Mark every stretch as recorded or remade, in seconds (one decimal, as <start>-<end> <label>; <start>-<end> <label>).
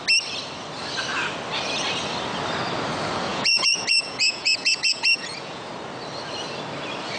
0.0-3.3 recorded; 3.3-5.7 remade; 5.7-7.2 recorded